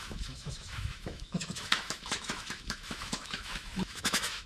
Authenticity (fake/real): fake